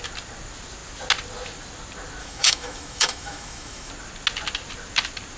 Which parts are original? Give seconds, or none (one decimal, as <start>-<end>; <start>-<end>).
0.0-2.2; 3.9-5.4